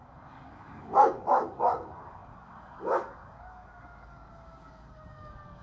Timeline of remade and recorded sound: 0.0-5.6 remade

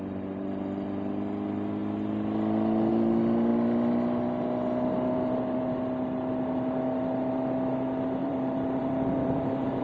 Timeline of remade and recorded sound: 0.0-8.2 recorded; 8.2-9.8 remade

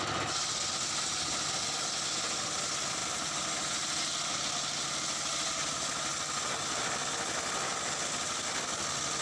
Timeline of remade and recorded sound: 0.0-9.2 recorded

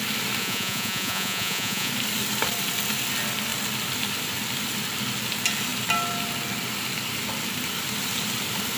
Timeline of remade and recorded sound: 0.0-0.4 recorded; 0.4-1.9 remade; 1.9-8.8 recorded

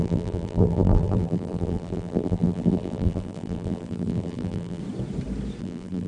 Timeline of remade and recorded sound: 0.0-4.8 remade; 4.8-5.6 recorded; 5.6-6.1 remade

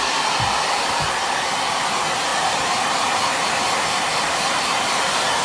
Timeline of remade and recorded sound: 0.0-2.3 recorded; 2.3-3.5 remade; 3.5-4.1 recorded; 4.1-5.4 remade